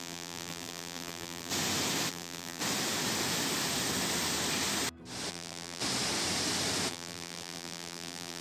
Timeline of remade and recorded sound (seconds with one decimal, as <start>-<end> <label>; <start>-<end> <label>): 0.0-1.5 remade; 1.5-2.1 recorded; 2.1-2.6 remade; 2.6-5.3 recorded; 5.3-5.8 remade; 5.8-6.9 recorded; 6.9-8.4 remade